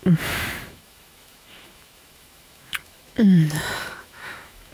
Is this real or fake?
fake